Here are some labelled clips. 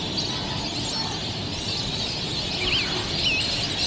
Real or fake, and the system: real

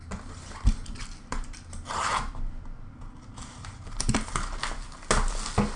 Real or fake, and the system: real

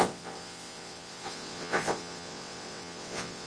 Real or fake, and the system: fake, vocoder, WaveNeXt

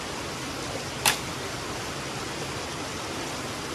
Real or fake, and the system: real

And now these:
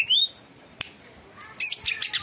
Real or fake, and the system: real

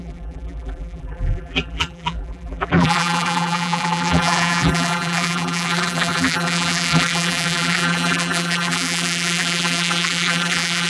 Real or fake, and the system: fake, vocoder, BigVGAN v2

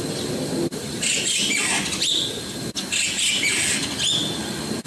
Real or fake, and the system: real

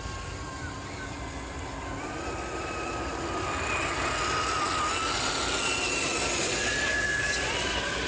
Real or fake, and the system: real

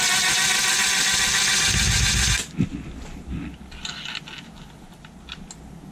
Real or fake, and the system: real